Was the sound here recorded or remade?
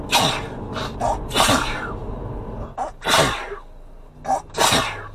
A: recorded